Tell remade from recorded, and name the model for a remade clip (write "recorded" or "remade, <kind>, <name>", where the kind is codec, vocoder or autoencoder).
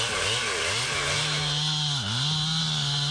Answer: recorded